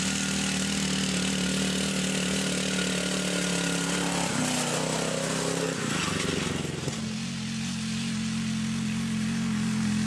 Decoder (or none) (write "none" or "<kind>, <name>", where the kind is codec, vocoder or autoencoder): none